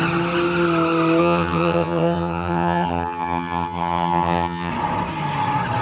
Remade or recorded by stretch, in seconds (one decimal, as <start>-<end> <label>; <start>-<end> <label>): 0.0-1.2 recorded; 1.2-4.7 remade; 4.7-5.8 recorded